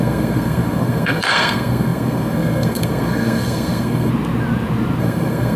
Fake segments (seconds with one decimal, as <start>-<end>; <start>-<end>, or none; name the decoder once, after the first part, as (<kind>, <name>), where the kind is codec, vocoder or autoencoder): 0.0-4.1 (codec, SNAC); 5.0-5.6